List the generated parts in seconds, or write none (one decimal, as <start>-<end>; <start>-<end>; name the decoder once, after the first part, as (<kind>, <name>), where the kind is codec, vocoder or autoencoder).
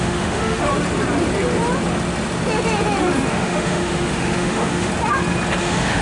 0.0-0.7 (autoencoder, DAC-VAE); 3.3-4.9; 5.6-6.0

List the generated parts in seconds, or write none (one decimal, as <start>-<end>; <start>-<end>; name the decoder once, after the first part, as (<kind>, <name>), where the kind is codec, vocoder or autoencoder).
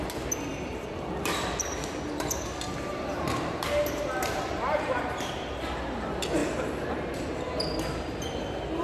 2.9-5.6 (vocoder, BigVGAN v2)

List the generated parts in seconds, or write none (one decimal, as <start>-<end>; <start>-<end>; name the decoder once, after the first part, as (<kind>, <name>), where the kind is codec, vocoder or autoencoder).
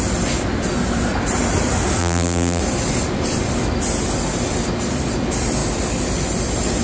2.0-2.6 (vocoder, BigVGAN v2)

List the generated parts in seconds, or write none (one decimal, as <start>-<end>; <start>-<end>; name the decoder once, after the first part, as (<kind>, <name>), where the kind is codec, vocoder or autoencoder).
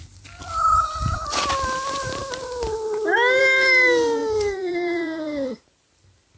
0.7-1.5 (vocoder, BigVGAN v2); 4.2-6.4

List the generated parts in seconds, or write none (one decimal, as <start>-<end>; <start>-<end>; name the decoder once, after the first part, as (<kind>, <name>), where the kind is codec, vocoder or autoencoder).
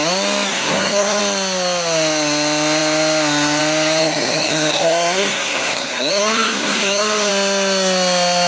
0.5-1.2 (codec, SNAC); 4.0-7.3